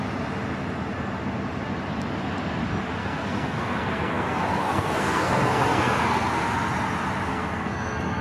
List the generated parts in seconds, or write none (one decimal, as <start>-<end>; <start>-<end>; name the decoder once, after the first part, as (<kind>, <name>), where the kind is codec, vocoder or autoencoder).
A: 3.0-6.5 (codec, SNAC); 7.3-8.2